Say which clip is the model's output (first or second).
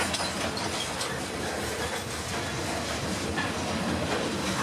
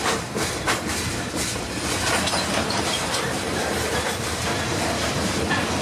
second